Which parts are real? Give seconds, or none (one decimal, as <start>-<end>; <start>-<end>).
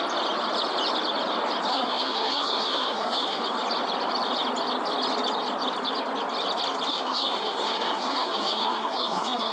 0.0-1.7; 3.4-6.9